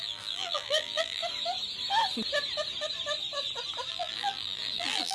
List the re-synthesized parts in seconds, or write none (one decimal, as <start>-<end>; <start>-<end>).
0.0-1.2; 3.9-5.1